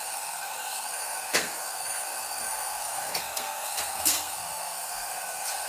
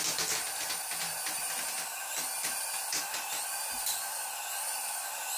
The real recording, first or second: second